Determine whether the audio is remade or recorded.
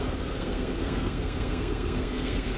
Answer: remade